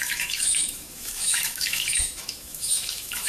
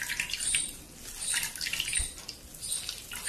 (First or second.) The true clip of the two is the second